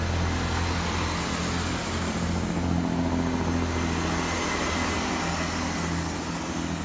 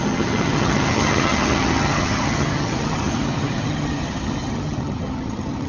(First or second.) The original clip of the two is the first